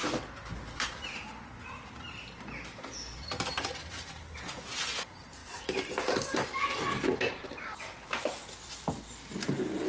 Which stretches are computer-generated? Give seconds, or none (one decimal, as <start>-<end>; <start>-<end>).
5.4-8.9

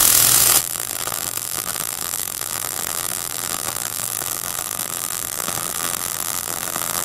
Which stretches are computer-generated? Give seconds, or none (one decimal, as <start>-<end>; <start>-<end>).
0.6-7.0

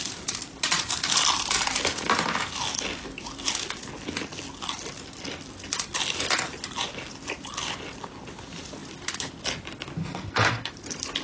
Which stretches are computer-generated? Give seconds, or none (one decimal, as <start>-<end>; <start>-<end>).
10.0-10.7

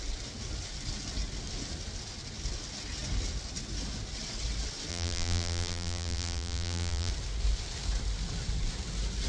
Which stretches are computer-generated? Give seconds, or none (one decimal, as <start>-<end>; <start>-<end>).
4.9-7.1

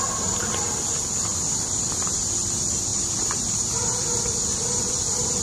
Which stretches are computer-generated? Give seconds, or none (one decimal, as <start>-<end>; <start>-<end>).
2.9-5.4

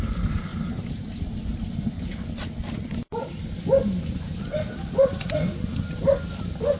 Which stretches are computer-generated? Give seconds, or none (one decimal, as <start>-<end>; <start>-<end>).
none

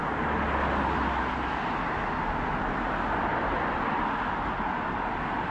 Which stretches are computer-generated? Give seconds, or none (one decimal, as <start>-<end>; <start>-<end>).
none